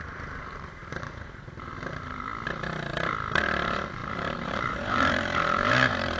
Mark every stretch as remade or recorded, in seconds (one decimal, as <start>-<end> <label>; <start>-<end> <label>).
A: 0.0-2.3 remade; 2.3-3.4 recorded; 3.4-6.2 remade